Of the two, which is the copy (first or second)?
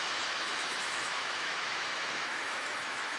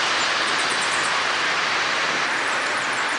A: first